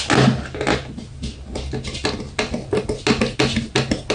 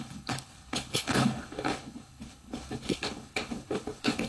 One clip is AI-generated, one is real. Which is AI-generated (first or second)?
second